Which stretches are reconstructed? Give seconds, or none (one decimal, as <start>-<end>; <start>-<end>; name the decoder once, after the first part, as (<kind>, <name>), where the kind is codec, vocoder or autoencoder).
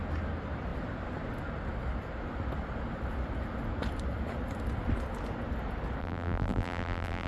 6.0-7.3 (vocoder, BigVGAN v2)